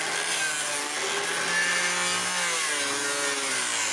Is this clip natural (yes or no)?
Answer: yes